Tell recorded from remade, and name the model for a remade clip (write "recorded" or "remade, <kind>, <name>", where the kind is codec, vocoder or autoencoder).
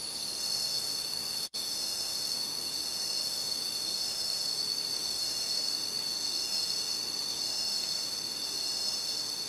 remade, autoencoder, DAC-VAE